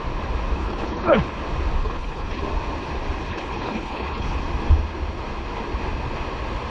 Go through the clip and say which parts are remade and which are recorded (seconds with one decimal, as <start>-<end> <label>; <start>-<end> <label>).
0.0-0.6 recorded; 0.6-1.2 remade; 1.2-1.8 recorded; 1.8-2.4 remade; 2.4-3.3 recorded; 3.3-4.4 remade; 4.4-6.7 recorded

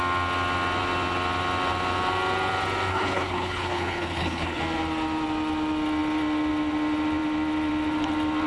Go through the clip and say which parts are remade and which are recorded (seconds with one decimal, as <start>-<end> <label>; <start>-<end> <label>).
0.0-2.9 recorded; 2.9-4.6 remade; 4.6-8.5 recorded

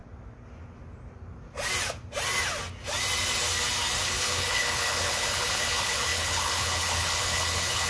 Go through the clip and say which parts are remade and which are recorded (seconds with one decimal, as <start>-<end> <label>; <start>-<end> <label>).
0.0-4.0 recorded; 4.0-7.9 remade